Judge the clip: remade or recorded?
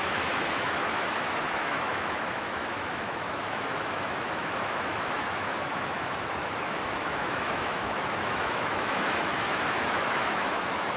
remade